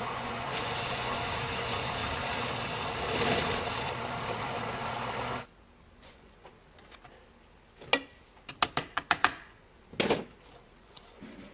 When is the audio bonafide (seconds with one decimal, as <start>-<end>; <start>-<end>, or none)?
2.0-5.9; 6.5-8.9; 9.7-10.8